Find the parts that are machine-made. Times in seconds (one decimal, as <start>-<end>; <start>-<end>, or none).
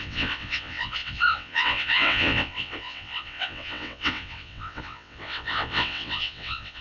0.0-6.8